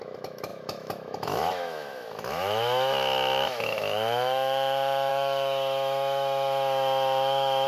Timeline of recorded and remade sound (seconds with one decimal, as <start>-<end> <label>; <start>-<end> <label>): 0.0-7.7 remade